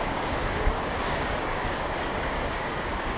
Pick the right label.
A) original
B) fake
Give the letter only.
B